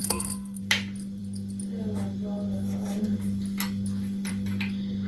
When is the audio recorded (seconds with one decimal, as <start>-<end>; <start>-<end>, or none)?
0.6-5.1